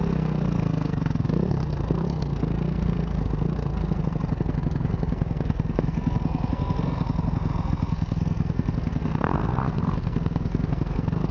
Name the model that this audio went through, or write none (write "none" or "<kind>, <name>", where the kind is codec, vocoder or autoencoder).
codec, SNAC